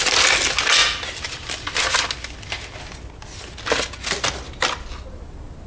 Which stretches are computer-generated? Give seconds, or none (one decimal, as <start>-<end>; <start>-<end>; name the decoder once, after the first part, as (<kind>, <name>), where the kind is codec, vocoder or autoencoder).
none